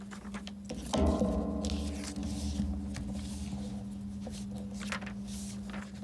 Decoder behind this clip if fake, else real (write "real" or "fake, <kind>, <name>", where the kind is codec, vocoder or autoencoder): real